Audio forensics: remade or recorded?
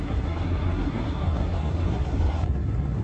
remade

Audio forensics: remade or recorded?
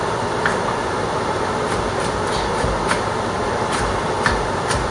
recorded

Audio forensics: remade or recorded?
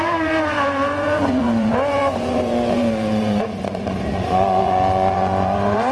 remade